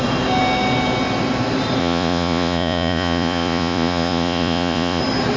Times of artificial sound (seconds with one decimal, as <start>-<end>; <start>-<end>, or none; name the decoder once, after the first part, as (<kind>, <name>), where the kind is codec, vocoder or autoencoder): 1.8-5.0 (vocoder, Vocos)